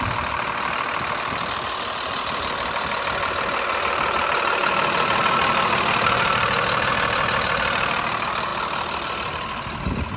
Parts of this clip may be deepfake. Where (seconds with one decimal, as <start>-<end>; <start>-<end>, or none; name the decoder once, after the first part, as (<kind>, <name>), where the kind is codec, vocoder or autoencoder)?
4.6-6.9 (vocoder, BigVGAN v2); 8.5-10.2